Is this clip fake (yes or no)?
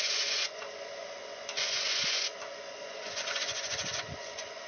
yes